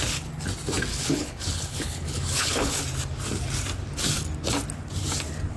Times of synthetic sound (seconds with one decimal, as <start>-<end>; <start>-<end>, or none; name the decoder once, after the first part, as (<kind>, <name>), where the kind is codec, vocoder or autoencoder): 0.9-2.8 (codec, HILCodec)